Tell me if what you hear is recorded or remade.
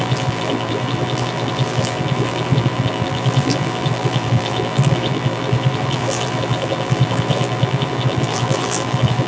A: remade